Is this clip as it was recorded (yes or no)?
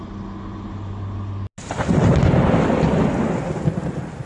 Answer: yes